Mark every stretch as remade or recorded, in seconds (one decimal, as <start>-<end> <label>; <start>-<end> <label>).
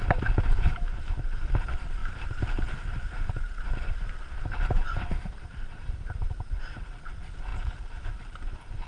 0.0-2.0 recorded; 2.0-6.8 remade; 6.8-7.5 recorded; 7.5-8.5 remade; 8.5-8.9 recorded